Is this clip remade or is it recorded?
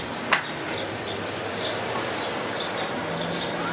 recorded